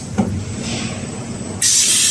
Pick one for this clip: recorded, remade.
recorded